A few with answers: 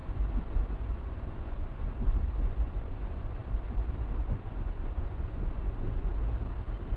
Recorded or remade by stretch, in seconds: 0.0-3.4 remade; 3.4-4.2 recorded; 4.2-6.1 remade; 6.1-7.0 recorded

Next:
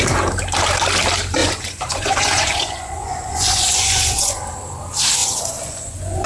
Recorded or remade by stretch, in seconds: 0.0-1.4 recorded; 1.4-4.4 remade; 4.4-5.2 recorded; 5.2-6.3 remade

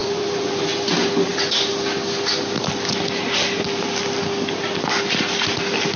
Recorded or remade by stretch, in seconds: 0.0-0.5 remade; 0.5-6.0 recorded

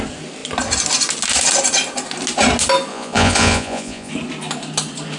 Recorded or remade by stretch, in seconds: 0.0-2.9 recorded; 2.9-4.1 remade; 4.1-5.2 recorded

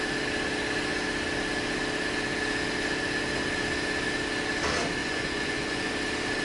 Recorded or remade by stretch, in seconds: 0.0-5.0 recorded; 5.0-5.9 remade; 5.9-6.4 recorded

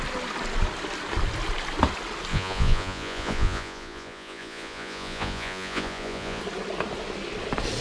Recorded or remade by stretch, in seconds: 0.0-2.3 recorded; 2.3-6.4 remade; 6.4-7.8 recorded

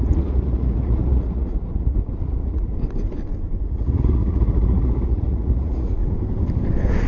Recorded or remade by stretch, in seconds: 0.0-2.7 remade; 2.7-3.6 recorded; 3.6-6.0 remade; 6.0-7.1 recorded

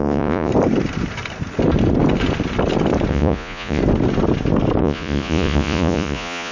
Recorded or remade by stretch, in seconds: 0.0-0.5 remade; 0.5-3.1 recorded; 3.1-3.8 remade; 3.8-4.8 recorded; 4.8-6.5 remade